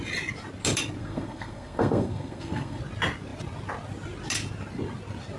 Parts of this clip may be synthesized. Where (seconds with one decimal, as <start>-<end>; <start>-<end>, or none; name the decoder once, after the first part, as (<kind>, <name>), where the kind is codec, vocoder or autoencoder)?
1.0-2.8 (codec, SNAC)